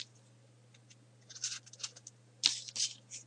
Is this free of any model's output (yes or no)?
yes